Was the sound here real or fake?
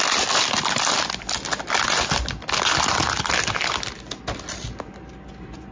real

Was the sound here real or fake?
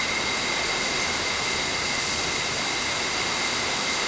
real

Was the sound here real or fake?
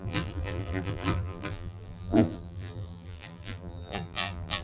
fake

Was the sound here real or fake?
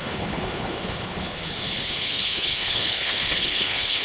fake